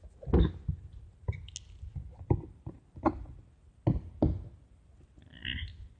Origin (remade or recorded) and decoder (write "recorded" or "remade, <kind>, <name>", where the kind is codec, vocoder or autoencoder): recorded